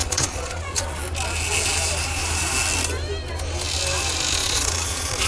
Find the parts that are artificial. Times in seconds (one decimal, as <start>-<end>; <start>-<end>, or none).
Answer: 0.0-1.0; 4.4-5.3